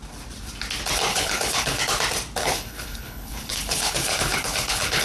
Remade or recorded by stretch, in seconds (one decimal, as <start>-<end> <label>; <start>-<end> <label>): 0.0-1.1 recorded; 1.1-1.8 remade; 1.8-2.4 recorded; 2.4-5.0 remade